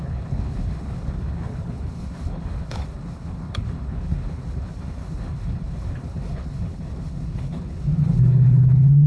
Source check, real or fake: fake